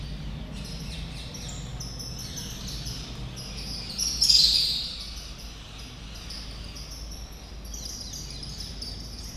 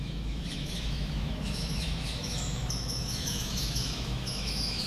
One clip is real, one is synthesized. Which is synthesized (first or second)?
second